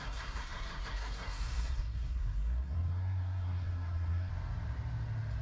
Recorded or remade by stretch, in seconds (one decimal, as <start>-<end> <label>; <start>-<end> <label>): 0.0-4.3 remade; 4.3-5.4 recorded